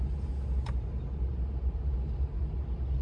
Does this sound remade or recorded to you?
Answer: recorded